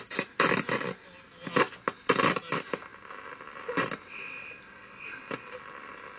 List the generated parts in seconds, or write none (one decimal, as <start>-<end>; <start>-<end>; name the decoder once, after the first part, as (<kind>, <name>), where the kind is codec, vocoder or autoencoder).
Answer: none